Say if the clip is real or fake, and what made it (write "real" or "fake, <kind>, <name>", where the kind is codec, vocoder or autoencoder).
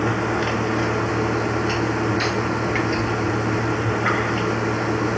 real